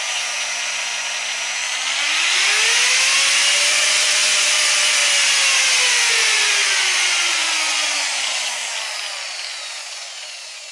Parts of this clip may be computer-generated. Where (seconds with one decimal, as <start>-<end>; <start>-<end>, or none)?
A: 0.0-1.6; 3.7-5.0; 6.1-8.6; 9.5-10.7

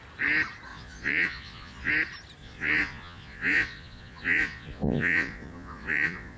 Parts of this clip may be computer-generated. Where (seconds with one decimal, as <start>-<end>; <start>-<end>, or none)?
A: 0.7-1.9; 2.4-6.4

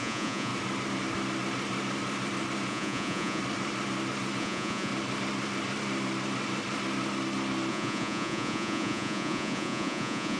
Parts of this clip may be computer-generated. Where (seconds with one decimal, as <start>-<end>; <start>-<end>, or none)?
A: 0.0-0.5; 2.7-3.4; 4.4-4.9; 7.7-10.4

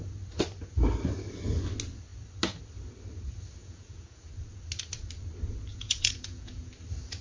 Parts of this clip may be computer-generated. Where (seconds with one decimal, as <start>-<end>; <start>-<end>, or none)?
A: 3.6-4.3; 5.7-6.7